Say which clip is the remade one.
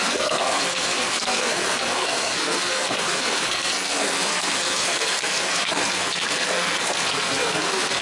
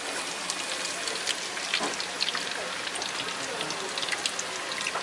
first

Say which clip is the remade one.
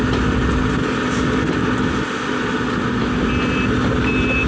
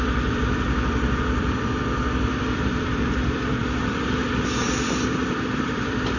second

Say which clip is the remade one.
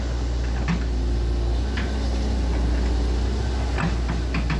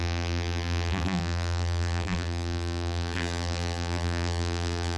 second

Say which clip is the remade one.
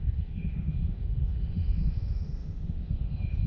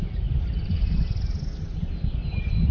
first